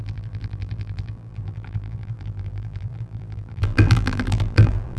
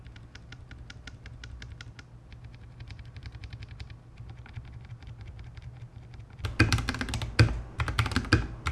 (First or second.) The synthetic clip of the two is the first